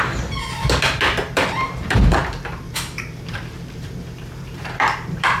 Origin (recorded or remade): remade